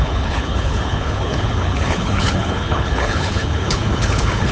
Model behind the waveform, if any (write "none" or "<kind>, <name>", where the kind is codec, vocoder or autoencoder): codec, HILCodec